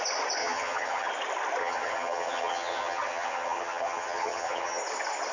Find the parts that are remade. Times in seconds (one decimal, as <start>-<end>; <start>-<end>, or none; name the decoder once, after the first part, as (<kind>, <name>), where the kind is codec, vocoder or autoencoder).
0.4-1.1 (vocoder, HiFi-GAN); 1.6-4.8